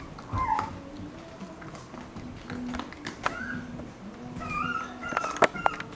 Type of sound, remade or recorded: recorded